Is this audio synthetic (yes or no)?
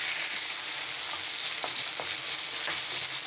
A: no